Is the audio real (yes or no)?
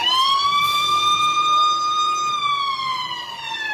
no